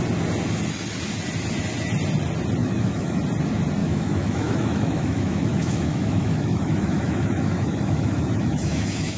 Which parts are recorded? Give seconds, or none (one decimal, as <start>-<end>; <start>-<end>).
0.0-2.6; 3.2-3.8